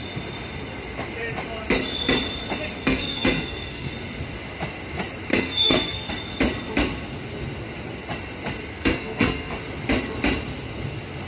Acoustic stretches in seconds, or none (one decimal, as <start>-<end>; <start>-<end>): 0.0-2.8; 3.9-5.3; 6.1-8.7; 9.5-11.3